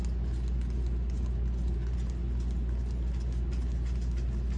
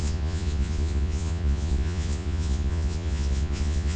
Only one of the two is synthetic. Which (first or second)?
second